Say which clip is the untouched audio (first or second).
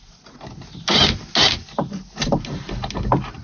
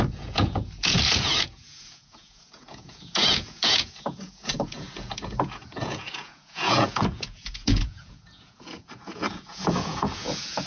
first